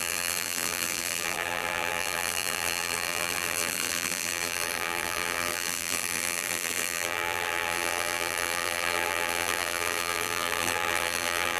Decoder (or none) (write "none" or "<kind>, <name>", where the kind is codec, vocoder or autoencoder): vocoder, BigVGAN v2